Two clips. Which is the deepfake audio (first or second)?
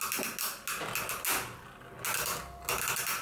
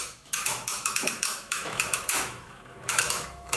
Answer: second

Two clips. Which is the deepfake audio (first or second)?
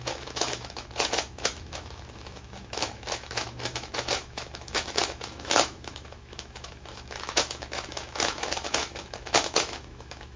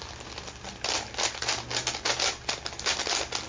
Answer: first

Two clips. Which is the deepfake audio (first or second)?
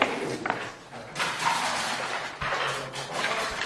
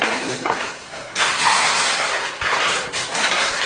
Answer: second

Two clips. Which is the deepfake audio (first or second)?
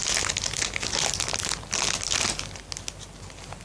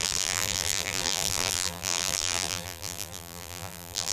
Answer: second